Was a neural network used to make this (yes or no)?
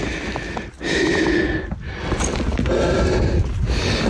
no